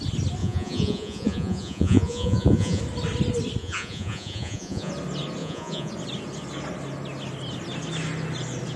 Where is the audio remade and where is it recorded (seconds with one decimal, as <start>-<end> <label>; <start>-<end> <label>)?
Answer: 0.0-0.4 recorded; 0.4-2.8 remade; 2.8-3.6 recorded; 3.6-4.9 remade; 4.9-5.4 recorded; 5.4-5.9 remade; 5.9-8.8 recorded